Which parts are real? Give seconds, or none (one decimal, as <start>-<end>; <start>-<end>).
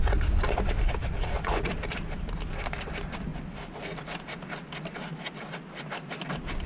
0.0-1.0; 1.7-6.7